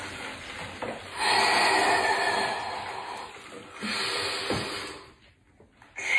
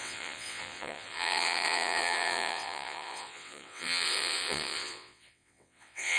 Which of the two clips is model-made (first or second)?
second